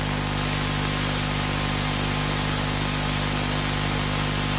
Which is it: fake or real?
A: real